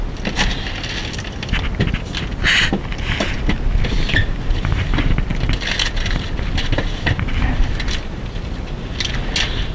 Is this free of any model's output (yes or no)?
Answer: yes